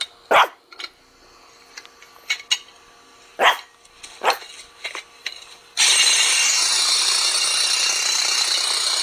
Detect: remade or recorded recorded